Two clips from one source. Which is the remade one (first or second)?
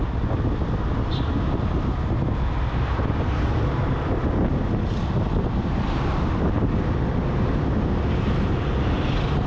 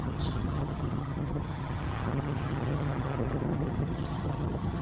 second